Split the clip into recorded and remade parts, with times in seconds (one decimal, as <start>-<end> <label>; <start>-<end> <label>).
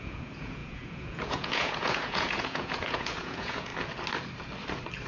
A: 0.0-3.7 remade; 3.7-5.1 recorded